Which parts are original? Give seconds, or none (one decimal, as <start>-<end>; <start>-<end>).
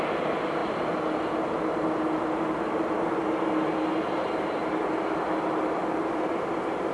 0.0-6.9